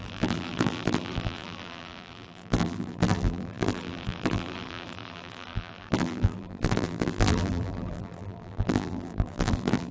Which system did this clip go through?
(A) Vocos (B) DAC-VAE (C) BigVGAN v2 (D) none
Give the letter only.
C